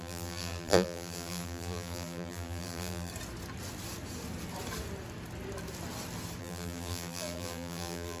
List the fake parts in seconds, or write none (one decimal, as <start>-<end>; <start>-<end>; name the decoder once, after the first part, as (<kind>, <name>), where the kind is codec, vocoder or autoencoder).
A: 0.0-3.1 (vocoder, BigVGAN v2); 6.4-8.2

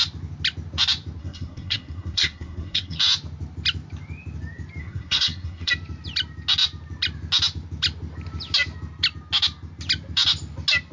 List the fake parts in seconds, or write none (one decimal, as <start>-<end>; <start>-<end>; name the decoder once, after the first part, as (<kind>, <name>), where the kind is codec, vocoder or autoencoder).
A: 1.2-3.0 (codec, SNAC); 4.8-5.7

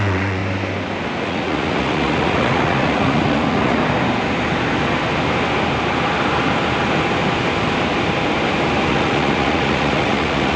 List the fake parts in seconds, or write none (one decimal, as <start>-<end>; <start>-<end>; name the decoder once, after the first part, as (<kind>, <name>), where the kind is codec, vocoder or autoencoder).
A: 0.0-0.4 (vocoder, Vocos); 1.2-3.8; 8.9-10.6

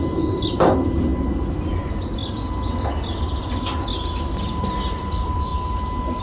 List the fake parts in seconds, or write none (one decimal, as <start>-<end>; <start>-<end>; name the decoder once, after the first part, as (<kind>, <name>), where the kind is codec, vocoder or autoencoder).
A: 0.0-1.1 (vocoder, BigVGAN v2); 1.8-2.2; 3.2-5.5